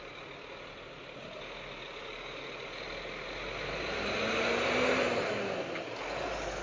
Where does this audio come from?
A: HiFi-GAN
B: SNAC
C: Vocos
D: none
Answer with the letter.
D